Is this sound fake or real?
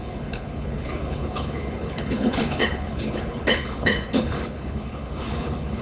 fake